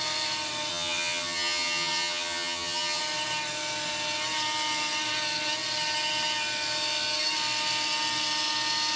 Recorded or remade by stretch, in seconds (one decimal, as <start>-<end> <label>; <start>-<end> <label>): 0.0-0.7 recorded; 0.7-3.0 remade; 3.0-9.0 recorded